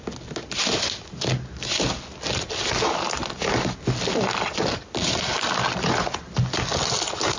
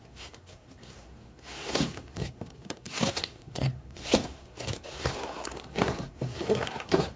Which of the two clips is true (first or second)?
first